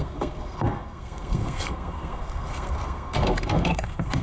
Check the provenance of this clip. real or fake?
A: fake